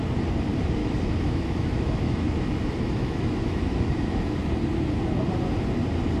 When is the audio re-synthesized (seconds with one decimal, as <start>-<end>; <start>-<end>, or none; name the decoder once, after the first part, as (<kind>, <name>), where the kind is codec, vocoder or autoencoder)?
0.8-4.5 (autoencoder, DAC-VAE)